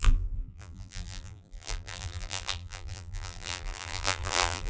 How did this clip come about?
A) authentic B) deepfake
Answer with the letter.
B